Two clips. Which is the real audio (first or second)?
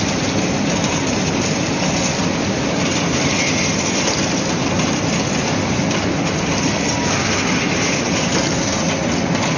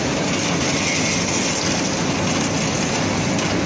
second